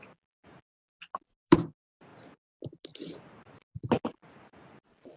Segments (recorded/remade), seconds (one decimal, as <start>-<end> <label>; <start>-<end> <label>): 0.0-5.2 recorded